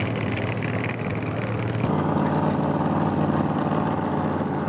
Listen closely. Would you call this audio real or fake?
real